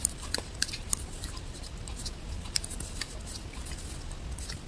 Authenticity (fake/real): real